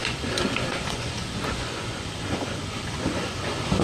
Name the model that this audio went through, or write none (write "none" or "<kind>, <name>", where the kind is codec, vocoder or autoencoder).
vocoder, Vocos